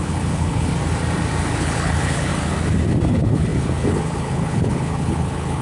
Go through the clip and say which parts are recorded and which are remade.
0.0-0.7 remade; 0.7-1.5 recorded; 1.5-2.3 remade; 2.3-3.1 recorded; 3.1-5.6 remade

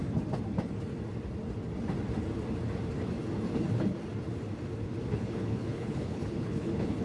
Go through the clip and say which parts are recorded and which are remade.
0.0-5.1 recorded; 5.1-7.0 remade

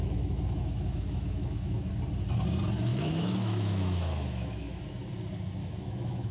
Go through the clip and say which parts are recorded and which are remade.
0.0-1.9 remade; 1.9-2.9 recorded; 2.9-4.8 remade; 4.8-5.6 recorded; 5.6-6.3 remade

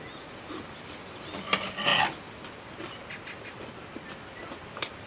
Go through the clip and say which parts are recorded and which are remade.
0.0-5.1 recorded

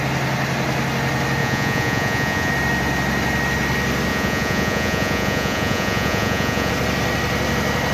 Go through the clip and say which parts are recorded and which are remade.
0.0-1.4 recorded; 1.4-2.5 remade; 2.5-4.1 recorded; 4.1-6.7 remade; 6.7-7.9 recorded